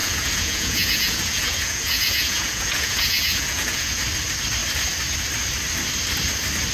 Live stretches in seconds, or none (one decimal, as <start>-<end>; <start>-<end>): 4.0-6.7